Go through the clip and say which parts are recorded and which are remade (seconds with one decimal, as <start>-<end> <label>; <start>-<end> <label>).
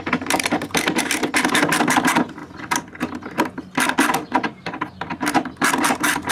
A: 0.0-6.3 recorded